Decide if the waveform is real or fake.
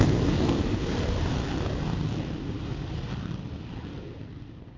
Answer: real